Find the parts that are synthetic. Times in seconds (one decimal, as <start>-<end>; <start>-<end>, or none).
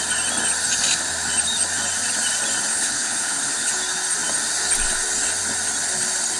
2.7-3.7